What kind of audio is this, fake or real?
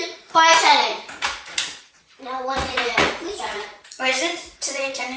fake